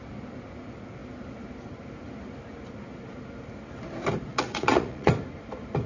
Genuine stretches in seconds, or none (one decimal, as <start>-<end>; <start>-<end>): 0.0-4.3; 5.1-5.9